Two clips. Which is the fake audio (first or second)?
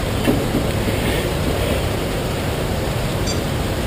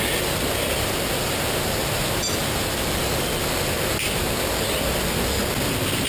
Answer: first